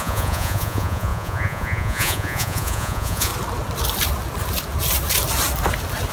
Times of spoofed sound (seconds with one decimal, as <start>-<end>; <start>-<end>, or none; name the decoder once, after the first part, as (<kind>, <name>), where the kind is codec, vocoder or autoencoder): 0.0-3.3 (vocoder, Vocos)